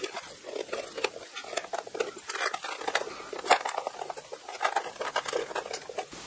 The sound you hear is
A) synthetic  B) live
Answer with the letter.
B